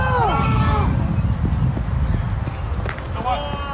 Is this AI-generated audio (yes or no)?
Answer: no